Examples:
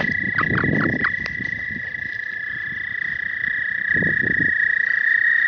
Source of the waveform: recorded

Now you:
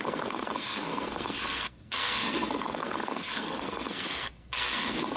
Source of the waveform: remade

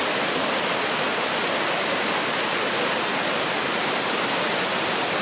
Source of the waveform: recorded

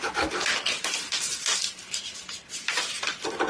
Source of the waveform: recorded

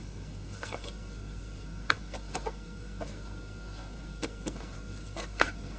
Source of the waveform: remade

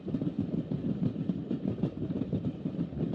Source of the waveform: recorded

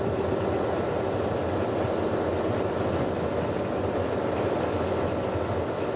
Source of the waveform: recorded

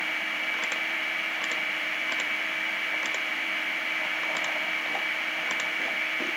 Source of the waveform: remade